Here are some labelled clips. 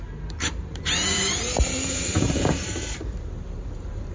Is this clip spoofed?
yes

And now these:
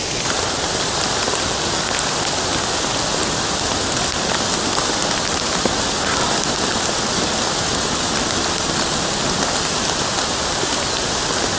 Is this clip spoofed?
no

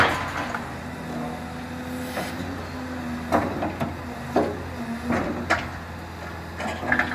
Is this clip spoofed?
no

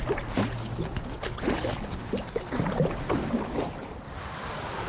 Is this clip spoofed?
no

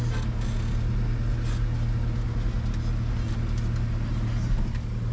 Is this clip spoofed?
no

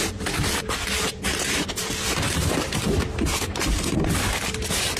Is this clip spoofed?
yes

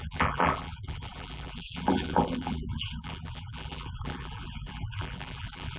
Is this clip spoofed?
yes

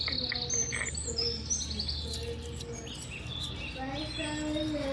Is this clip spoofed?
no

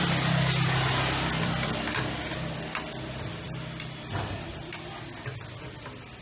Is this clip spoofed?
yes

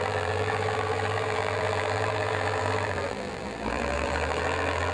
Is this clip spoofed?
yes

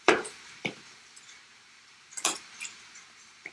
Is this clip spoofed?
yes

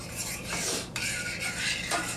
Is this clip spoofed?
yes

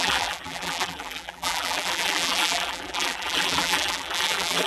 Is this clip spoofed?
yes